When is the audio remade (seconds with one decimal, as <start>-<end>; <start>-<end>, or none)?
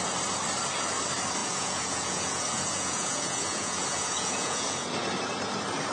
1.4-4.9